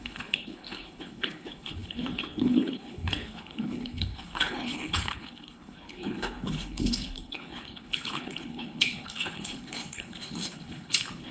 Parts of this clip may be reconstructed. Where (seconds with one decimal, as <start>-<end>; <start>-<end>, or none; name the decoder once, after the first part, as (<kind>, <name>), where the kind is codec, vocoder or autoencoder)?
0.0-11.3 (codec, HILCodec)